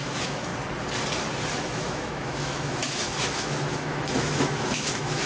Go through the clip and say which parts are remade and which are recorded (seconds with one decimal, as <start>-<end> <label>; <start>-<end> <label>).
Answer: 0.0-0.5 remade; 0.5-1.6 recorded; 1.6-5.3 remade